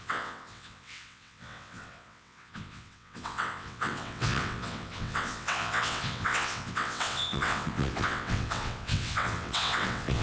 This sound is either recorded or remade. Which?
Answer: remade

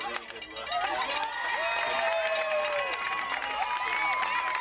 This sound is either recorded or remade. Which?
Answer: recorded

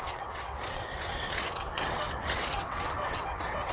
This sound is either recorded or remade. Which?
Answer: remade